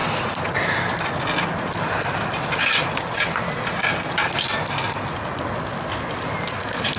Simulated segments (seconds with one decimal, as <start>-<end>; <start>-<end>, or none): none